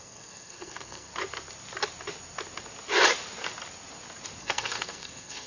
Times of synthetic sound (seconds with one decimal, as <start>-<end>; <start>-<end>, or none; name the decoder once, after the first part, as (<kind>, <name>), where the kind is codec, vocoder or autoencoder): 0.0-1.1 (codec, SNAC); 4.4-5.5